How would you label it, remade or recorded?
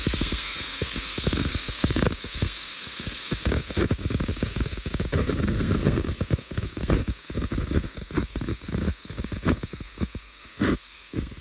remade